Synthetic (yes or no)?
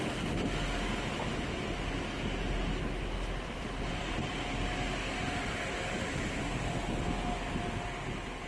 no